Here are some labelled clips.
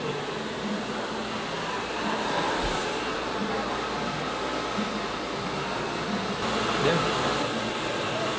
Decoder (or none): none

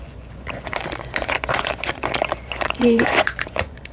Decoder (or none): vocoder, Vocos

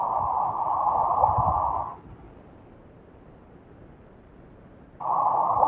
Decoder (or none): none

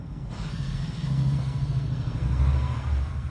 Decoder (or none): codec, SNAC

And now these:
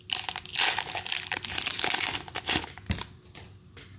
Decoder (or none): none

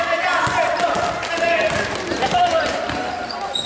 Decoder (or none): none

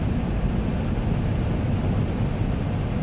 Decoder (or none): none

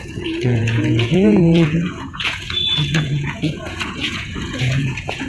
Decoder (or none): vocoder, Vocos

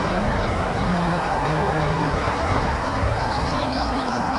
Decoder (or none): codec, SNAC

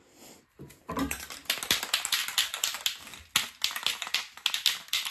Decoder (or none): none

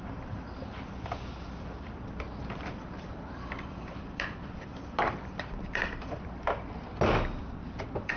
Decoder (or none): vocoder, BigVGAN v2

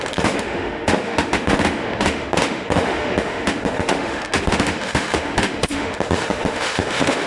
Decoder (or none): autoencoder, DAC-VAE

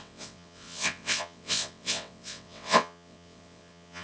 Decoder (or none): vocoder, WaveNeXt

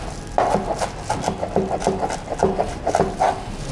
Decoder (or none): none